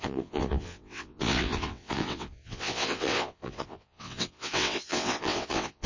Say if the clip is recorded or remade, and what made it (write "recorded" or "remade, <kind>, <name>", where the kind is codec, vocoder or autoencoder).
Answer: remade, vocoder, WaveNeXt